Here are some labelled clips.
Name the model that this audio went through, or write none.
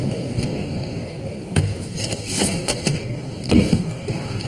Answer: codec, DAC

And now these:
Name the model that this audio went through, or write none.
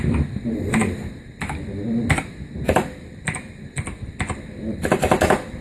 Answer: none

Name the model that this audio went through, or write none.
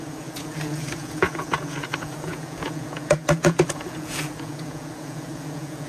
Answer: vocoder, Vocos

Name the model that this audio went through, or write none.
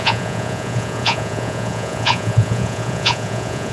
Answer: vocoder, Vocos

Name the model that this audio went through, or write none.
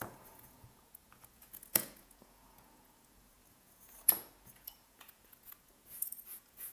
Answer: vocoder, Vocos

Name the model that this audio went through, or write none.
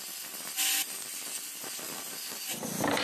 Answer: none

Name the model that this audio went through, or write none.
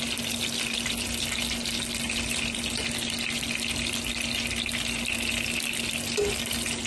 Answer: none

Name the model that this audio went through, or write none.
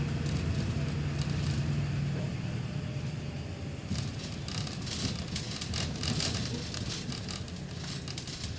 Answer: none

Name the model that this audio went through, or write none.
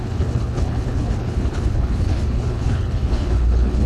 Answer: codec, HILCodec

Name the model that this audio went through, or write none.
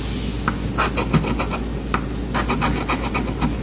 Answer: none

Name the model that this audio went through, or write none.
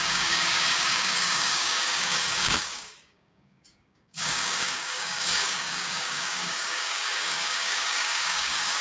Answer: codec, DAC